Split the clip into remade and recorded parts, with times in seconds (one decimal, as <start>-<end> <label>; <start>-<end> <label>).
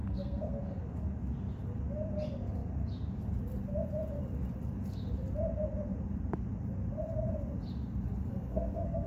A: 0.0-0.6 remade; 0.6-8.2 recorded; 8.2-9.1 remade